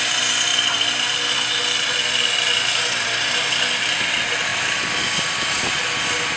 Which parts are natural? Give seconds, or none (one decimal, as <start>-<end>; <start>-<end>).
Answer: 0.0-6.4